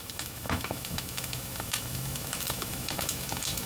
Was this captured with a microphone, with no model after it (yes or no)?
no